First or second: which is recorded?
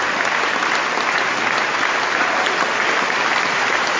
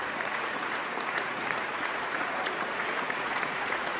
first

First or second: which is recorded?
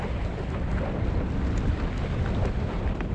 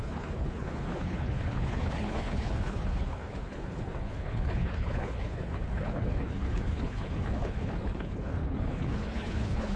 first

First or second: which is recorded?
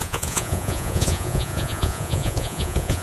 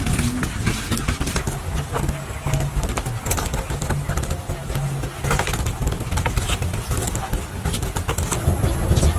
second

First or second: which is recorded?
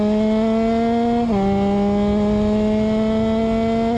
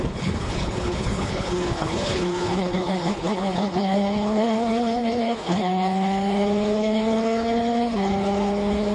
first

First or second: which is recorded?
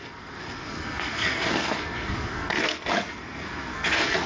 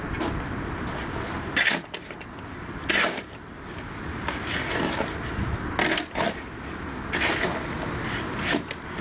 second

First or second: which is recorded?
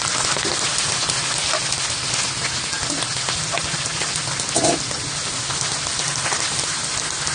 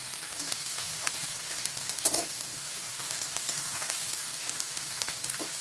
first